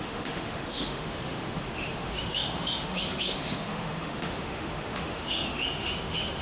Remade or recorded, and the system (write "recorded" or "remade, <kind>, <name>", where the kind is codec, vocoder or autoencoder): remade, autoencoder, DAC-VAE